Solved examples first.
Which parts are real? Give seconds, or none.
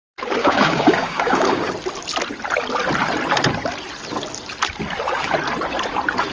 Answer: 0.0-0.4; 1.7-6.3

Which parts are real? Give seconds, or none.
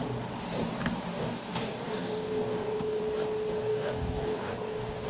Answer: 0.0-1.1; 3.0-3.5